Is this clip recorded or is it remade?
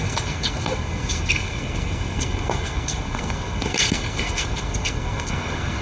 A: remade